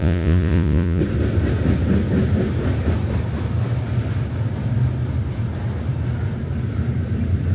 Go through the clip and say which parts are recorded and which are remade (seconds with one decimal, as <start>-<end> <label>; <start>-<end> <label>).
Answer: 0.0-1.0 remade; 1.0-7.5 recorded